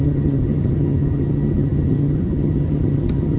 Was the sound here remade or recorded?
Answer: remade